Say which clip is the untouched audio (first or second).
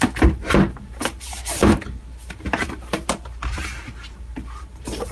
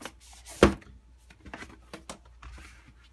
second